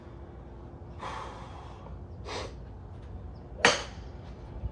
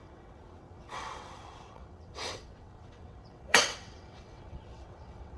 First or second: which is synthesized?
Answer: second